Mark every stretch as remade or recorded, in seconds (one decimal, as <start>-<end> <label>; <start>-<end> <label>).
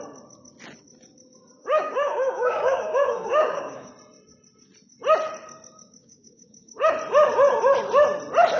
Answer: 0.0-1.5 recorded; 1.5-3.9 remade; 3.9-6.0 recorded; 6.0-6.9 remade; 6.9-8.6 recorded